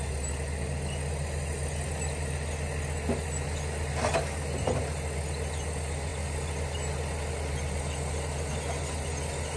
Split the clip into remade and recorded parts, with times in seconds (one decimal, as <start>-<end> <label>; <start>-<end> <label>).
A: 0.0-9.6 recorded